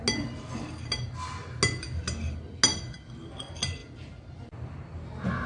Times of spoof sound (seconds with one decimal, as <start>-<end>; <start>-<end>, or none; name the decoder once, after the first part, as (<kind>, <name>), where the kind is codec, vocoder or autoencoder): none

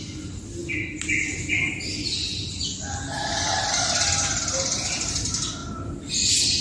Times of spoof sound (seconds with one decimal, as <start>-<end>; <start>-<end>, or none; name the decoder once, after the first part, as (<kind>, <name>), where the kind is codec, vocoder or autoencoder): none